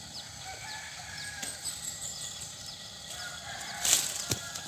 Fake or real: fake